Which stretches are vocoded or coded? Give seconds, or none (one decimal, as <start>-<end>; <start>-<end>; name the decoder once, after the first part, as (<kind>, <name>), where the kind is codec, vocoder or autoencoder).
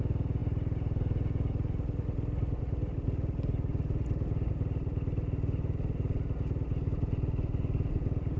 none